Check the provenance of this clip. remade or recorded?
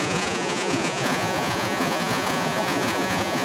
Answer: remade